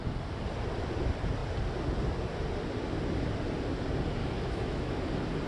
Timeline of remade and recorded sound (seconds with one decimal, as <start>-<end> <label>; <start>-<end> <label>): 0.0-4.2 recorded; 4.2-5.1 remade; 5.1-5.5 recorded